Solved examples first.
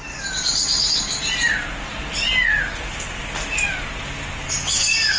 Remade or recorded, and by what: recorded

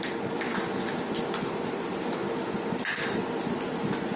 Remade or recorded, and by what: recorded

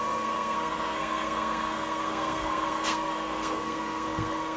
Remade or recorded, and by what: remade, codec, SNAC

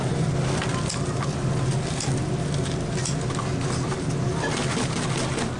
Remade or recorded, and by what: recorded